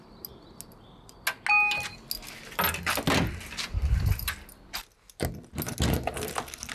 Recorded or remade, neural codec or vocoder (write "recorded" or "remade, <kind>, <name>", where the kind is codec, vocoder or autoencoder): recorded